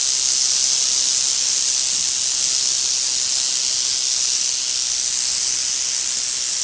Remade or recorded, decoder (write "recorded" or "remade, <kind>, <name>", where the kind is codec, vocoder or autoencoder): recorded